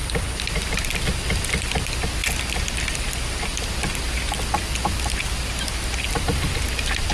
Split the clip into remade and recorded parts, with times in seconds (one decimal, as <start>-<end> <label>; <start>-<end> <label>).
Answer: 0.0-7.1 recorded